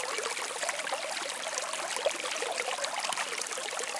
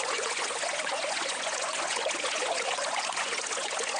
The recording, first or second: first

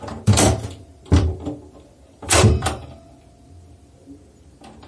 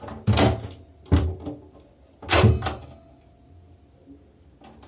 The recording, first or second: second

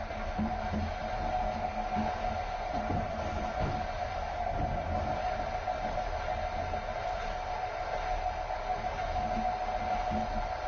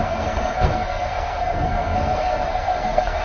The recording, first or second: first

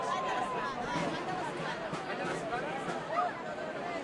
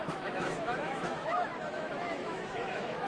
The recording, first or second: first